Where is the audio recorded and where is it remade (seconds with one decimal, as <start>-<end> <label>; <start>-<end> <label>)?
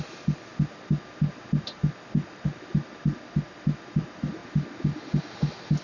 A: 0.0-5.8 recorded